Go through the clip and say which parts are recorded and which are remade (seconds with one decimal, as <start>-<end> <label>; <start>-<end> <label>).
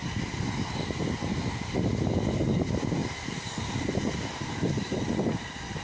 0.0-1.5 remade; 1.5-3.0 recorded; 3.0-5.8 remade